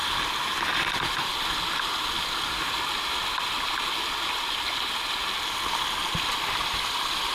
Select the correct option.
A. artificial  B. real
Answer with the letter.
B